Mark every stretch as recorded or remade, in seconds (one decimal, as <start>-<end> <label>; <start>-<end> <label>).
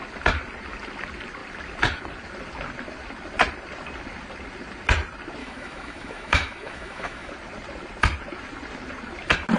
0.0-5.4 recorded; 5.4-7.3 remade; 7.3-9.6 recorded